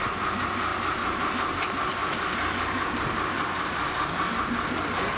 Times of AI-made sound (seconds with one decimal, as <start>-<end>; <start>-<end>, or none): none